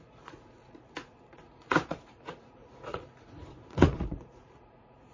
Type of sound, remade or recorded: remade